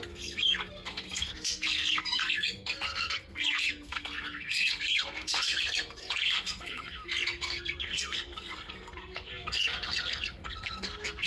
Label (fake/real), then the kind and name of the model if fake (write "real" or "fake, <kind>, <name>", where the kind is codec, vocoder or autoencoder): fake, codec, SNAC